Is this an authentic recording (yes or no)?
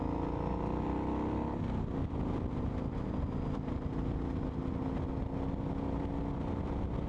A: yes